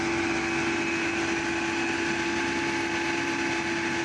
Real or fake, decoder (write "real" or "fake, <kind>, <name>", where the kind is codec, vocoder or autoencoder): real